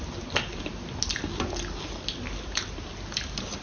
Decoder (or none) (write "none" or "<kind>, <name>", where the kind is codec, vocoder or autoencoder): none